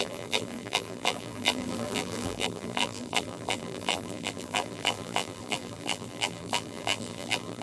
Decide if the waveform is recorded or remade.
remade